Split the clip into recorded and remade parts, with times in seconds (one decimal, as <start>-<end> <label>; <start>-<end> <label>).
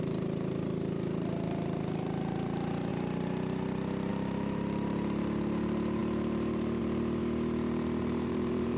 0.0-2.9 remade; 2.9-4.1 recorded; 4.1-7.2 remade; 7.2-8.0 recorded; 8.0-8.8 remade